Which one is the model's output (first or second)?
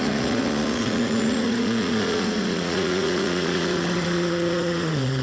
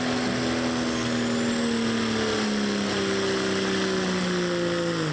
first